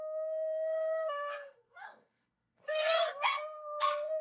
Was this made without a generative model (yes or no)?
no